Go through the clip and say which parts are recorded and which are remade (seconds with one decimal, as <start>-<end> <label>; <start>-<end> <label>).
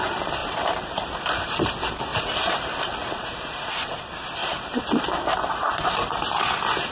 0.0-0.4 recorded; 0.4-1.5 remade; 1.5-2.1 recorded; 2.1-3.8 remade; 3.8-4.4 recorded; 4.4-5.9 remade; 5.9-6.9 recorded